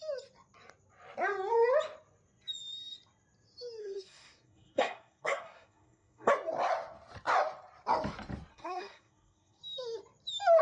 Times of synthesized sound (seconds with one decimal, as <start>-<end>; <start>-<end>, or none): 3.8-6.3; 8.5-9.6